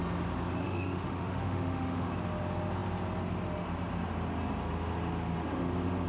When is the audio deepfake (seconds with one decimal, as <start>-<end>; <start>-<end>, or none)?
0.6-2.1